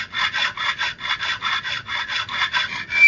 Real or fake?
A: real